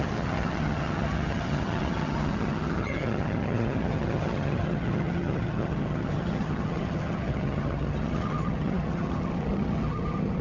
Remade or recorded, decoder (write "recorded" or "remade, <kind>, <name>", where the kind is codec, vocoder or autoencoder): remade, vocoder, HiFi-GAN